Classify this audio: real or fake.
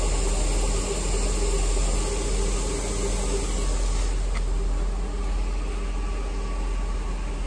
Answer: real